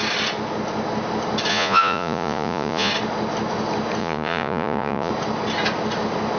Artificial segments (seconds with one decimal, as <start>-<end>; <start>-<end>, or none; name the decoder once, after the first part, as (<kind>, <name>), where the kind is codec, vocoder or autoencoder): 1.5-2.9 (vocoder, Vocos); 4.0-5.1